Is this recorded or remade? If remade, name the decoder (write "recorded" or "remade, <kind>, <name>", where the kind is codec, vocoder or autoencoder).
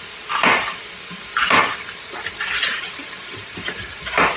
recorded